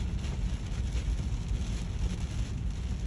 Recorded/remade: recorded